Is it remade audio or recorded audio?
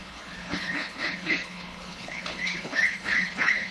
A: remade